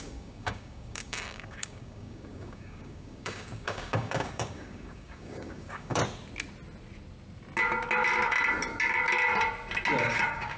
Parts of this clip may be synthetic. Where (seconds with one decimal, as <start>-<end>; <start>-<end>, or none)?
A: 0.0-6.0; 10.0-10.6

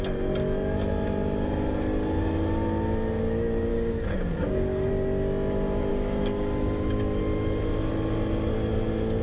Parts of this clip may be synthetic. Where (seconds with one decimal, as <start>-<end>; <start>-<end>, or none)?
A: 3.7-4.9; 5.9-7.2

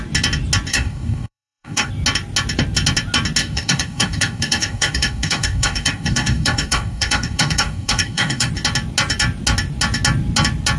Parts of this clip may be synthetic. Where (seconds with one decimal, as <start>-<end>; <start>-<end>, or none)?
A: 0.7-1.9; 3.4-8.5

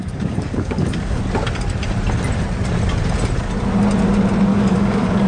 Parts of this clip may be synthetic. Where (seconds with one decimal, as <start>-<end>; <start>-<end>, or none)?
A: 0.0-1.2; 4.5-5.3

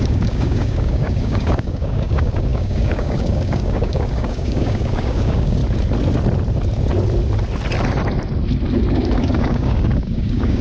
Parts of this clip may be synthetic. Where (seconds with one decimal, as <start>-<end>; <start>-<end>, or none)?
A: 0.0-5.6; 8.9-10.6